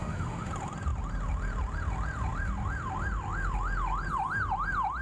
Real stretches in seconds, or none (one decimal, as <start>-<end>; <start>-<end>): 0.5-5.0